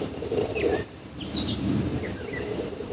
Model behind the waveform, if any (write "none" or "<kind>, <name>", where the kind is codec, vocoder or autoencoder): vocoder, BigVGAN v2